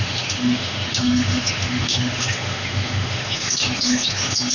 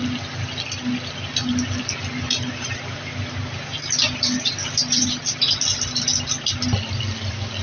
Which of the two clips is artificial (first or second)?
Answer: first